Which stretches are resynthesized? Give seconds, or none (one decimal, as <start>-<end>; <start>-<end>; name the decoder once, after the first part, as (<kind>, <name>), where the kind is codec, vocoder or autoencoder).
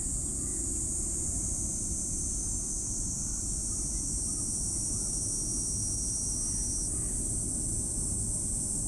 2.4-2.9 (autoencoder, DAC-VAE)